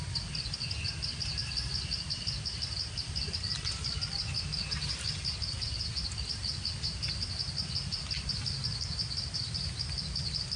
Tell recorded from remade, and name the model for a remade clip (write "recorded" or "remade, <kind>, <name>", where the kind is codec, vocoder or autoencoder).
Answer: recorded